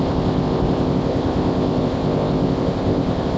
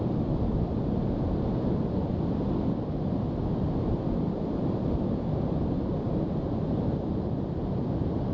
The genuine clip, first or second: second